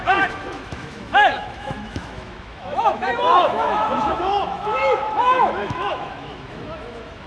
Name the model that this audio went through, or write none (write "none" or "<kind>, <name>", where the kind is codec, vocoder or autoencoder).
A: autoencoder, DAC-VAE